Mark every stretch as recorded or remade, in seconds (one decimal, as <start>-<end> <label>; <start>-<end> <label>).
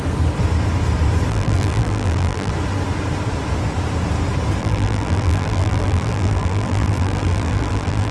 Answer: 0.0-1.3 recorded; 1.3-2.5 remade; 2.5-4.6 recorded; 4.6-8.1 remade